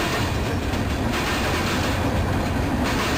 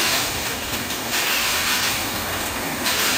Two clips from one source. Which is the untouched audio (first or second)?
first